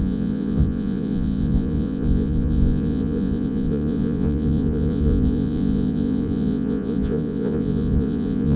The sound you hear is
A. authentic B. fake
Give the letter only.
B